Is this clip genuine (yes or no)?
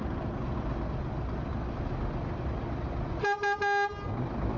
yes